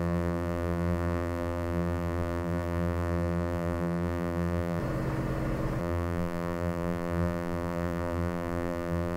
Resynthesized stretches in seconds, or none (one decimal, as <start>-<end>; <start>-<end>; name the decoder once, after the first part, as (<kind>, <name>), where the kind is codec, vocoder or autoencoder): 0.0-4.8 (vocoder, BigVGAN v2); 5.8-9.2

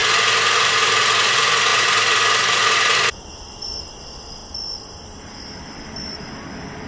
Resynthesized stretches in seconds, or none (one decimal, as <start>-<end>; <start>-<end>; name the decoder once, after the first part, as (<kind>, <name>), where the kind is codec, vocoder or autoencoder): 0.7-1.7 (vocoder, BigVGAN v2); 3.3-4.4; 5.6-6.9

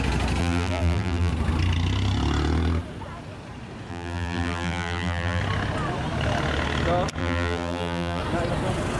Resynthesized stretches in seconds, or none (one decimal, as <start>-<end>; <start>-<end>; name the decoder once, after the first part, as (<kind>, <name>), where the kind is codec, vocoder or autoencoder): 0.4-1.3 (vocoder, BigVGAN v2); 3.9-5.4; 7.2-8.2

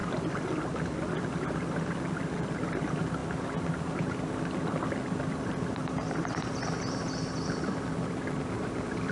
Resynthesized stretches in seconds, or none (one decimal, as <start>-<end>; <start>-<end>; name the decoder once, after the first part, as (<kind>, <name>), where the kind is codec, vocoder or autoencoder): 0.6-9.1 (vocoder, BigVGAN v2)

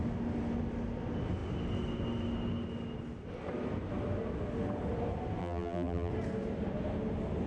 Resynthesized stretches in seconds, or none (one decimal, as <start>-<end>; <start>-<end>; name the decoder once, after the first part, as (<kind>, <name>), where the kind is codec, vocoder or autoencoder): 5.4-6.1 (vocoder, BigVGAN v2)

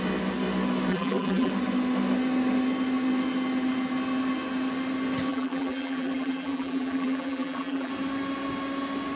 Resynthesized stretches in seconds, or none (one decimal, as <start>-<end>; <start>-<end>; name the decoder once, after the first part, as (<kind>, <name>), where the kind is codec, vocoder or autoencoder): 0.9-1.5 (vocoder, BigVGAN v2); 5.3-7.9

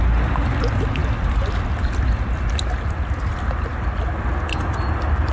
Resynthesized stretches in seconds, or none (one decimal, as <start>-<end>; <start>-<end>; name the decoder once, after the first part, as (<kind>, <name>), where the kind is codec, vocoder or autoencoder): none